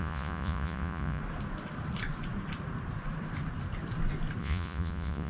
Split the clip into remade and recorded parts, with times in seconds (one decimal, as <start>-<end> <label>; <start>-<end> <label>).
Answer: 0.0-1.2 remade; 1.2-4.4 recorded; 4.4-5.3 remade